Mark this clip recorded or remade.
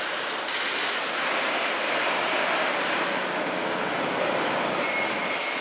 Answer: recorded